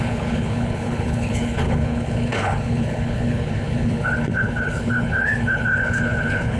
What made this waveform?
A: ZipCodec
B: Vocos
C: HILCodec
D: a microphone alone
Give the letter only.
C